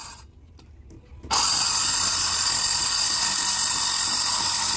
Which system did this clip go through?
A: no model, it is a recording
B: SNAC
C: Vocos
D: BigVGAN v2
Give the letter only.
A